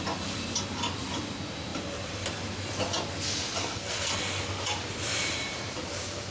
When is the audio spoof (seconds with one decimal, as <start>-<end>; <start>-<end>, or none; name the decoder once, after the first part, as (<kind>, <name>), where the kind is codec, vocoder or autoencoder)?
3.6-4.4 (codec, SNAC)